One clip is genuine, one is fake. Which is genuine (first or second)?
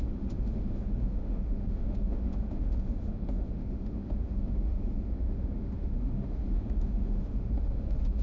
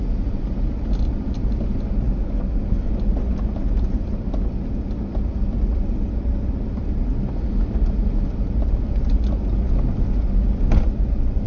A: second